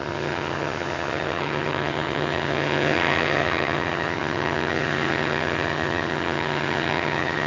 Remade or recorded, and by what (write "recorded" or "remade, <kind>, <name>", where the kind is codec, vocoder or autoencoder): remade, vocoder, HiFi-GAN